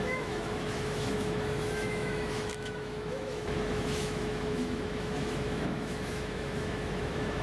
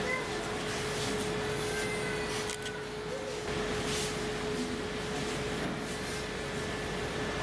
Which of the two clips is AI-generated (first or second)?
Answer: first